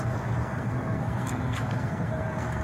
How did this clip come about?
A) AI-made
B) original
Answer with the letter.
A